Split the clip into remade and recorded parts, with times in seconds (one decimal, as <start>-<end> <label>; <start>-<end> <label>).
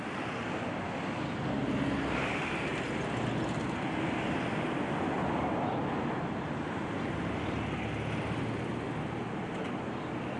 0.0-10.4 recorded